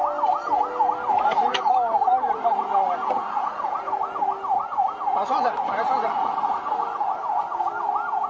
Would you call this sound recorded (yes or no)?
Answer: yes